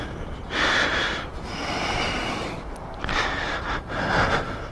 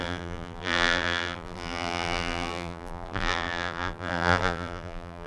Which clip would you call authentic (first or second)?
first